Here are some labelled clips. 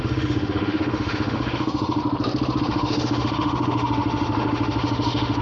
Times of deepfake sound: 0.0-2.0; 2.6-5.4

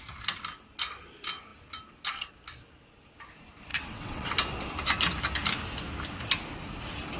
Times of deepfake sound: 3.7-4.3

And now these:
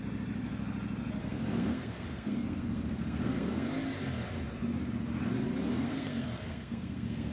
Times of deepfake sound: 1.2-3.7; 5.7-7.3

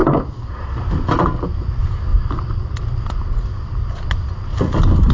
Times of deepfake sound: 0.0-0.6